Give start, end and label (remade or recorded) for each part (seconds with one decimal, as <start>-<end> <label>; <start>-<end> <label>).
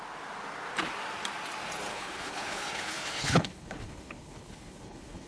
0.0-1.9 recorded; 1.9-5.3 remade